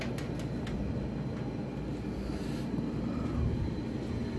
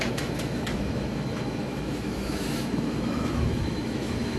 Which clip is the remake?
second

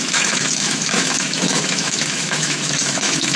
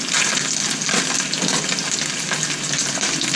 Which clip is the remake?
first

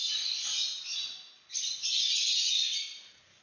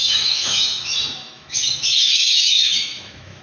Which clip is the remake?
second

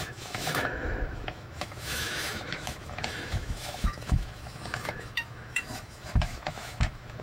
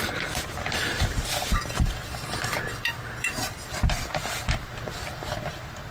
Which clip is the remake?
first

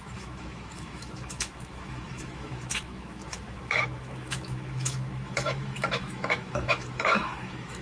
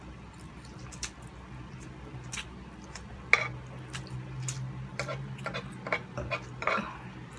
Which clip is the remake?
first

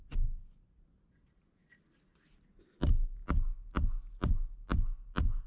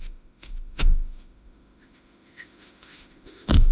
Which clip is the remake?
second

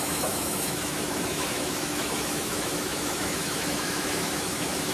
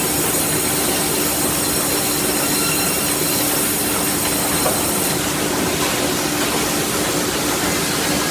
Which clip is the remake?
first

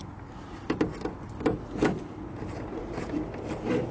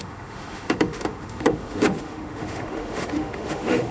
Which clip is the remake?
second